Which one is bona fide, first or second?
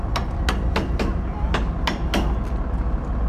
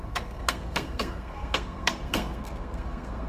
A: first